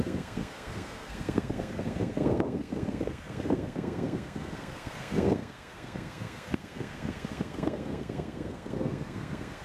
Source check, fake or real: fake